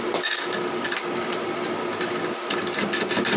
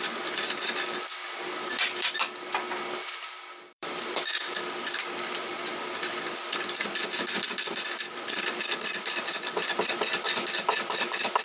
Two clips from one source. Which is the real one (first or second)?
first